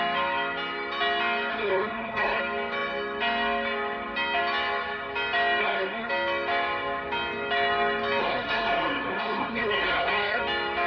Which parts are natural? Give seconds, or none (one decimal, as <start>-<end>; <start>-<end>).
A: 0.0-1.5; 2.4-5.6; 6.1-8.2; 10.4-10.9